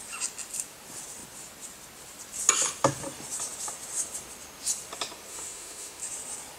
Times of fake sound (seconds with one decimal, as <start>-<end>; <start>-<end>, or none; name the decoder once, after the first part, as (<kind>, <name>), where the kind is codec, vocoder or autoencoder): 5.3-6.0 (autoencoder, DAC-VAE)